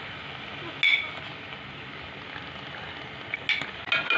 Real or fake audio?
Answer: real